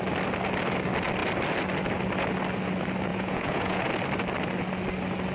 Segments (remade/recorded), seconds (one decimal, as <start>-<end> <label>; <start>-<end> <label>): 0.0-3.1 recorded; 3.1-3.9 remade; 3.9-5.3 recorded